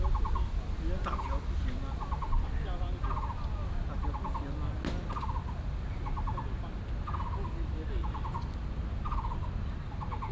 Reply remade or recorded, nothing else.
recorded